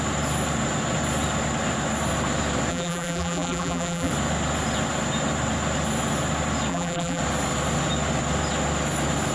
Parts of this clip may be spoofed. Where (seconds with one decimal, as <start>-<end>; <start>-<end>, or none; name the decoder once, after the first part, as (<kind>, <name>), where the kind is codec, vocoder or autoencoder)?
2.7-4.1 (vocoder, BigVGAN v2); 6.7-7.2